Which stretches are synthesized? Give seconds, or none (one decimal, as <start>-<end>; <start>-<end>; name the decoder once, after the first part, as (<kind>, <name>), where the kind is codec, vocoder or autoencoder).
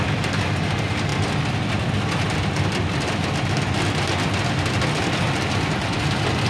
none